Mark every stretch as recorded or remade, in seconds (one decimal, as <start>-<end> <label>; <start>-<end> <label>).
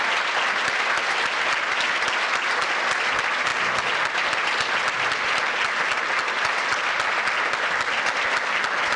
0.0-9.0 recorded